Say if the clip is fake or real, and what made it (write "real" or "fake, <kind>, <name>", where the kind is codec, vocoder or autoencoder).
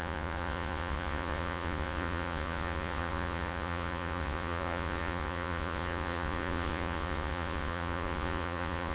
fake, vocoder, Vocos